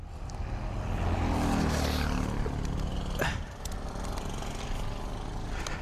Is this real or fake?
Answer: real